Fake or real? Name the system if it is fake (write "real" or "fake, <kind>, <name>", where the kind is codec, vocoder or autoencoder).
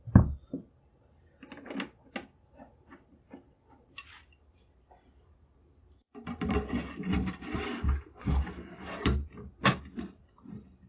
real